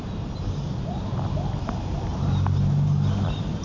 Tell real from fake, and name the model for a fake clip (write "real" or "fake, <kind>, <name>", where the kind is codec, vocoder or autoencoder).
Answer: real